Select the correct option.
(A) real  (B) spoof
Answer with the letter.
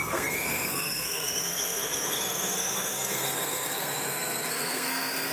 B